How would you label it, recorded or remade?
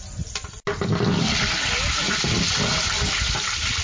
recorded